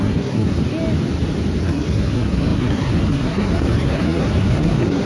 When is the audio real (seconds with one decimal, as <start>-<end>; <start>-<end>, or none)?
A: 0.6-1.6